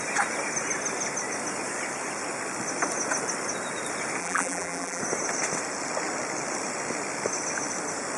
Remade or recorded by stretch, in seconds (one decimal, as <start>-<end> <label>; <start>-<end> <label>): 0.0-4.2 recorded; 4.2-5.0 remade; 5.0-8.2 recorded